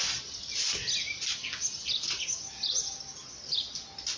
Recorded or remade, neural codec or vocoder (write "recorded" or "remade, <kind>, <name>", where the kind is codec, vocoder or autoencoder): recorded